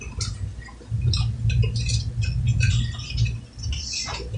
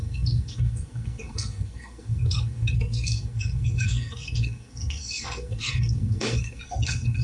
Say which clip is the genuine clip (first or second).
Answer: first